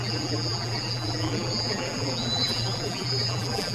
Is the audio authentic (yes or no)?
no